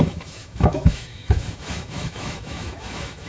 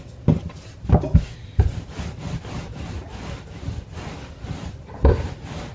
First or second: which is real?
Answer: second